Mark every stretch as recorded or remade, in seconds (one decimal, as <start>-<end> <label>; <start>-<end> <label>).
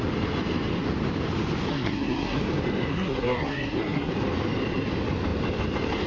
0.0-1.7 recorded; 1.7-2.4 remade; 2.4-2.9 recorded; 2.9-4.1 remade; 4.1-6.1 recorded